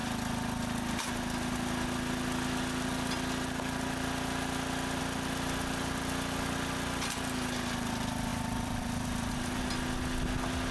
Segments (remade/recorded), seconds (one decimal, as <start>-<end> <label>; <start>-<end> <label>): 0.0-8.3 recorded; 8.3-9.6 remade; 9.6-10.7 recorded

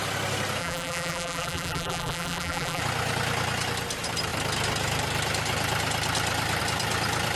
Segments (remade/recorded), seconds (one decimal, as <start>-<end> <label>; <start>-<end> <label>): 0.0-0.6 recorded; 0.6-2.8 remade; 2.8-7.4 recorded

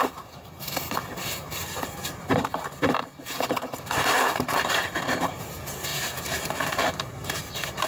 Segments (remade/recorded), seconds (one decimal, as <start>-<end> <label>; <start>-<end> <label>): 0.0-3.0 recorded; 3.0-5.5 remade; 5.5-5.9 recorded; 5.9-7.4 remade; 7.4-7.9 recorded

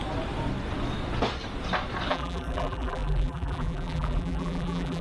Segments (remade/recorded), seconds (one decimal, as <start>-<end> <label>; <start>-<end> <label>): 0.0-2.1 recorded; 2.1-5.0 remade

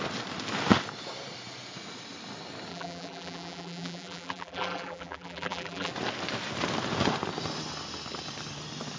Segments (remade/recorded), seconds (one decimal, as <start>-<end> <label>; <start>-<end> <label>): 0.0-2.7 recorded; 2.7-5.9 remade; 5.9-9.0 recorded